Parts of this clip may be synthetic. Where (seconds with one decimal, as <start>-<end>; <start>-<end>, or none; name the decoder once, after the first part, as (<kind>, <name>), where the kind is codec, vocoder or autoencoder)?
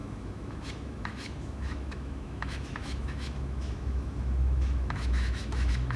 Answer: 0.0-6.0 (autoencoder, DAC-VAE)